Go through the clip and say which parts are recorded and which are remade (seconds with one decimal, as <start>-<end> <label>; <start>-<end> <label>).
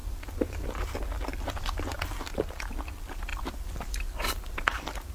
0.0-0.9 remade; 0.9-1.3 recorded; 1.3-2.4 remade; 2.4-3.3 recorded; 3.3-3.9 remade; 3.9-5.1 recorded